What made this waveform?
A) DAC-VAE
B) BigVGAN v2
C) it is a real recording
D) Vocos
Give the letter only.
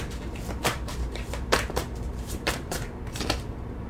B